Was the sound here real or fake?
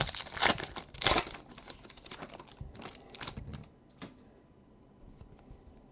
real